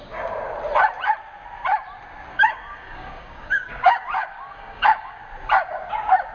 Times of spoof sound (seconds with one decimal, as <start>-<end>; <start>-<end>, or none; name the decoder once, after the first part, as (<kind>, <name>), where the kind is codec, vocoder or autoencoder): 2.3-5.2 (codec, DAC)

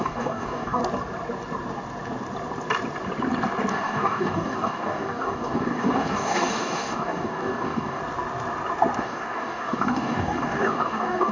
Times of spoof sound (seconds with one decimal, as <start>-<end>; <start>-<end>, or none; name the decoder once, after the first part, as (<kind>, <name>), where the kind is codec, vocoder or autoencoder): 0.0-0.8 (codec, DAC); 3.7-8.0; 9.0-11.3

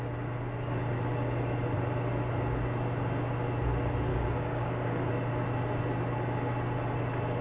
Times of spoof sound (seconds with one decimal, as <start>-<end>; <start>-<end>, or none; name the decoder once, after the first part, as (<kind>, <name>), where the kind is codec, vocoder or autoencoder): 4.1-5.1 (codec, DAC)

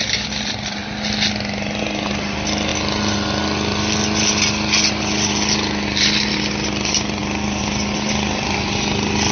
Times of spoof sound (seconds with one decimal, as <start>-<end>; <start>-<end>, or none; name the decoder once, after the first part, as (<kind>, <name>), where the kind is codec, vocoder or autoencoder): none